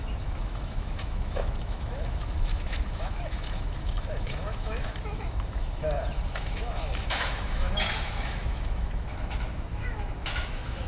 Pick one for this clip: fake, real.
fake